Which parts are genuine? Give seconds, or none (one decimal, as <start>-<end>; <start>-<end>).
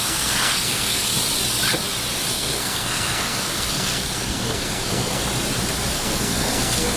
1.1-2.3; 5.2-5.9